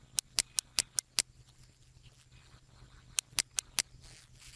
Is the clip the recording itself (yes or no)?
yes